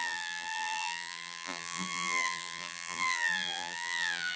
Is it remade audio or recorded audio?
remade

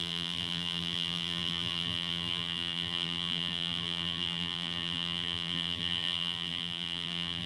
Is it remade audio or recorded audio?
remade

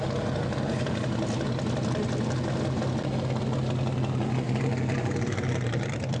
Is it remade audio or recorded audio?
recorded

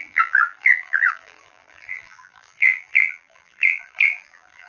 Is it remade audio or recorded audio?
remade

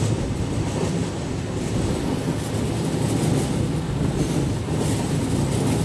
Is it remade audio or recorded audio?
recorded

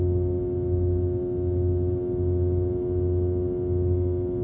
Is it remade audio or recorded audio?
recorded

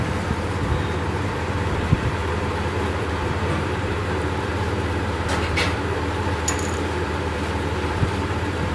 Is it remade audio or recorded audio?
remade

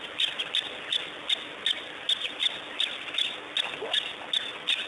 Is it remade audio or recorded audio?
recorded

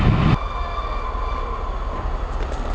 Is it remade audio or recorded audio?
recorded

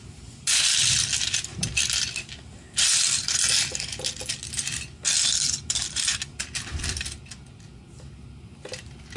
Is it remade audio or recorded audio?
recorded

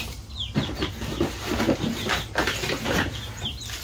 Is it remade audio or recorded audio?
recorded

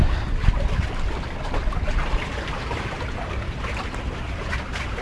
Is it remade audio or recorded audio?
remade